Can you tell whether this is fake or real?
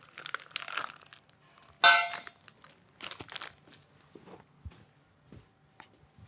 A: real